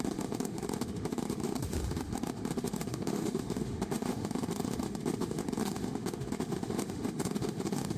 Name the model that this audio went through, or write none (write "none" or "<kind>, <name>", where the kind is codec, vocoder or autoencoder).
autoencoder, DAC-VAE